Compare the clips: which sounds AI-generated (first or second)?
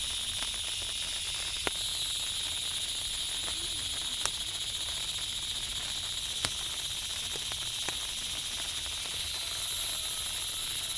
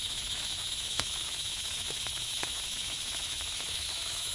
second